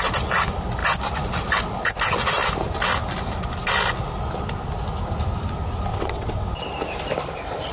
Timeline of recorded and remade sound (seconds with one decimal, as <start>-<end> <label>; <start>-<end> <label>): 0.0-5.9 recorded; 5.9-6.5 remade; 6.5-7.7 recorded